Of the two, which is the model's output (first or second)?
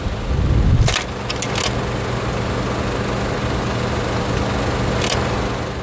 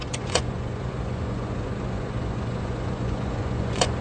second